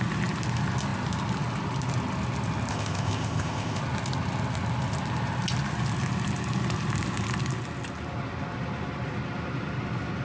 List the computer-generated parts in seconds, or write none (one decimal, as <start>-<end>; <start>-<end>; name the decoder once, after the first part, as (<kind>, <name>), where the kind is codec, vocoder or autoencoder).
2.7-3.8 (codec, ZipCodec)